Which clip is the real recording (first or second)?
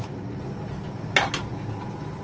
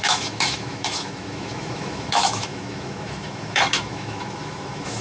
first